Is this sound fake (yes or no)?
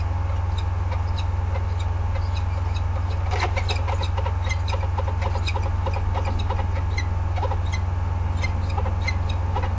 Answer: no